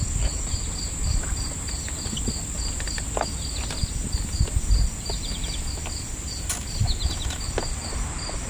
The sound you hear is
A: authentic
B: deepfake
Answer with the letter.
A